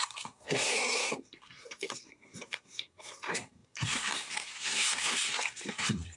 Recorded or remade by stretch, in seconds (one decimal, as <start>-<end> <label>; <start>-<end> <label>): 0.0-6.2 remade